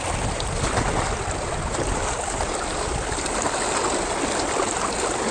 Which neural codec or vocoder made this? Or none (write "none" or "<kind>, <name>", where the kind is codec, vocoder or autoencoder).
none